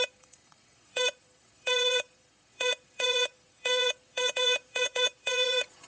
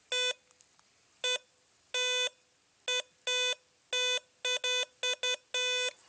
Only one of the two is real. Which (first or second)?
second